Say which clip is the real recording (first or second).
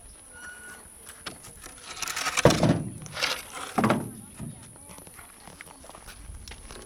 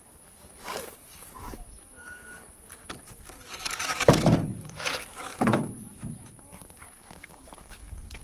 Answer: first